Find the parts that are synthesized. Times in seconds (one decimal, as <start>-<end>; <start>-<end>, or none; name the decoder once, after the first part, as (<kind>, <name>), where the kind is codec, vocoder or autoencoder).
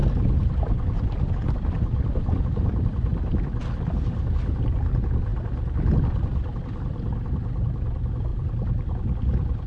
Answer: 1.3-3.1 (vocoder, BigVGAN v2); 4.3-5.3; 5.9-9.7